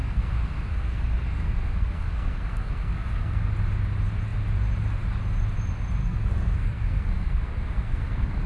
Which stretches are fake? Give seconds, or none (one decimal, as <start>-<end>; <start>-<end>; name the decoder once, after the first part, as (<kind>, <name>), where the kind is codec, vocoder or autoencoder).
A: 0.0-3.5 (codec, SNAC); 6.0-8.5